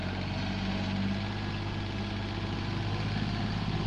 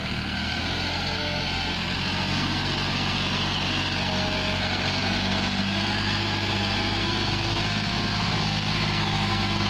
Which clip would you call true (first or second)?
first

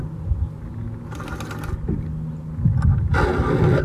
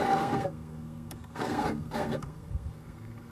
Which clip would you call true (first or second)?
first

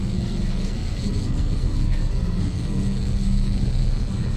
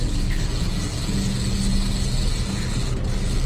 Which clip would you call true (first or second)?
second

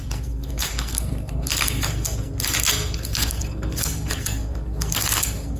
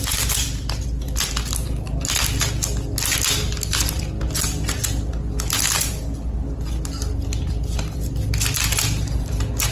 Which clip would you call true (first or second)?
second